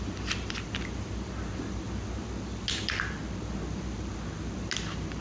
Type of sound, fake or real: real